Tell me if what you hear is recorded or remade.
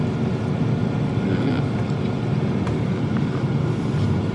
recorded